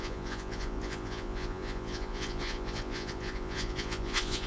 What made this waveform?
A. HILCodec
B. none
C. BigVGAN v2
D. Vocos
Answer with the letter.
D